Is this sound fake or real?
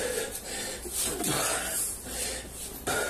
real